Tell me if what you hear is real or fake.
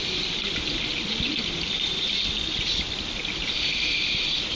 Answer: real